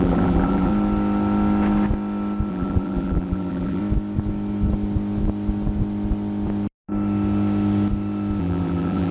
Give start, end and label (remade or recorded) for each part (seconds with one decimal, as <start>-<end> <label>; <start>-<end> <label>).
0.0-0.7 remade; 0.7-2.5 recorded; 2.5-3.8 remade; 3.8-8.4 recorded; 8.4-9.1 remade